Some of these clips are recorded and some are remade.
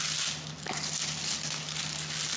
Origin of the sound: recorded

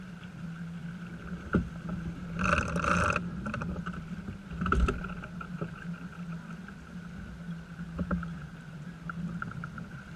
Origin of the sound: recorded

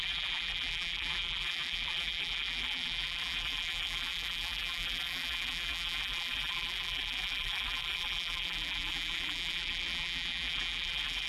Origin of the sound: remade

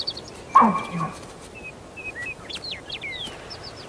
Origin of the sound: recorded